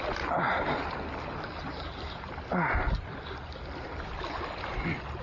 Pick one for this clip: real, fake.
real